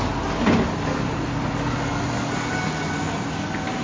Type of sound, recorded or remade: recorded